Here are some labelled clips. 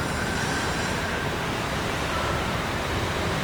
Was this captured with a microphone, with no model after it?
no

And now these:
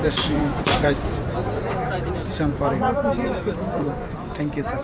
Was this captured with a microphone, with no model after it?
no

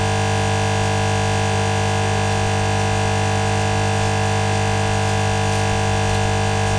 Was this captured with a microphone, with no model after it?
yes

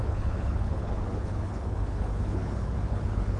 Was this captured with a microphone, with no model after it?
no